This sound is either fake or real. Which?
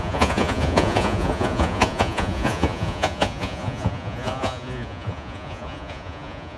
fake